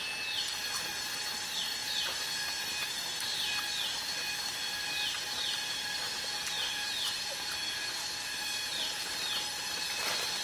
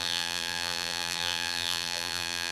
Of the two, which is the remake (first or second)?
second